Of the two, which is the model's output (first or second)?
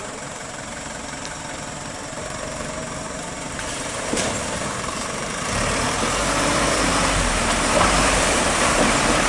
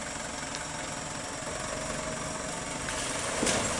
first